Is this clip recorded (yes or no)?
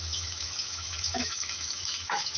no